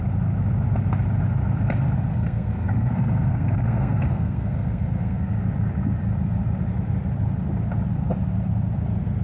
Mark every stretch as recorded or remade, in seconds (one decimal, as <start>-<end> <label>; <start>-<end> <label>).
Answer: 0.0-2.1 recorded; 2.1-5.4 remade; 5.4-9.2 recorded